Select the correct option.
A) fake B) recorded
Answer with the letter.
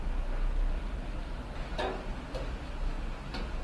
B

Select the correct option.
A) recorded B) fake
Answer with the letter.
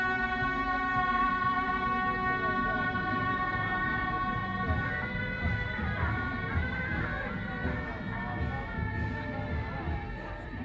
A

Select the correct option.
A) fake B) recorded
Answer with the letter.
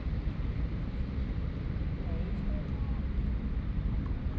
A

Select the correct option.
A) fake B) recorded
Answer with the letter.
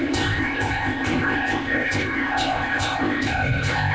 A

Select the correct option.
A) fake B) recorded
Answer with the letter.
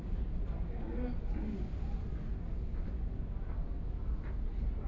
B